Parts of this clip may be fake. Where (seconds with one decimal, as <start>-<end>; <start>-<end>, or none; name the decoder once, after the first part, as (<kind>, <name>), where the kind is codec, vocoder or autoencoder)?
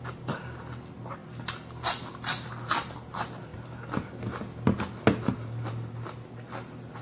none